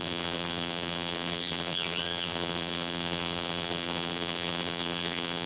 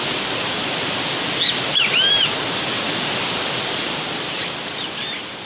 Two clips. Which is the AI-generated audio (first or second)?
first